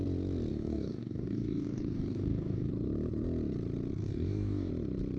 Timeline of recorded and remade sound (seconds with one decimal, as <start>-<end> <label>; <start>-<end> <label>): 0.0-0.5 recorded; 0.5-2.7 remade; 2.7-4.0 recorded; 4.0-4.7 remade; 4.7-5.2 recorded